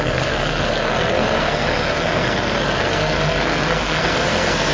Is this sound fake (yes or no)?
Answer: yes